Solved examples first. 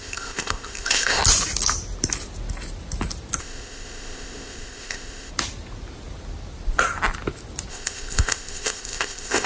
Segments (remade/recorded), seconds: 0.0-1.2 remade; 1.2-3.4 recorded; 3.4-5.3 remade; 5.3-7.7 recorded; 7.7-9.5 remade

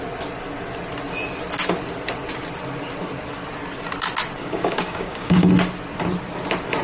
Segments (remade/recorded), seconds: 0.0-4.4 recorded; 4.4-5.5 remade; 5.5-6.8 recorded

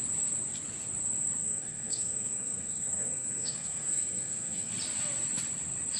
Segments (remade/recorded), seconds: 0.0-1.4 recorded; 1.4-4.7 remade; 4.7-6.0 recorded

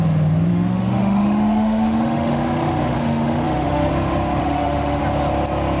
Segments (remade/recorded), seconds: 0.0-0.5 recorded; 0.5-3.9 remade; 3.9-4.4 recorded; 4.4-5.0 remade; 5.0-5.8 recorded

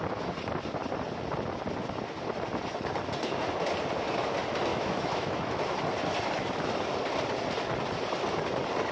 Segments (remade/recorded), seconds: 0.0-4.7 recorded; 4.7-5.6 remade; 5.6-8.9 recorded

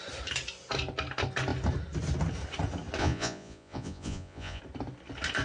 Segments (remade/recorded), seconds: 0.0-3.0 recorded; 3.0-4.6 remade; 4.6-5.4 recorded